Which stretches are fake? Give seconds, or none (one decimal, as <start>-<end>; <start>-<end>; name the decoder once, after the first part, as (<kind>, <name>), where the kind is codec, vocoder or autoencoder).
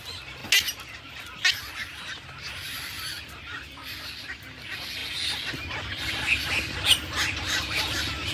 none